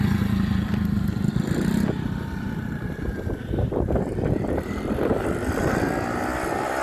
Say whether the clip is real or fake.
real